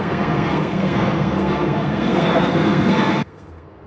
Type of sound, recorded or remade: remade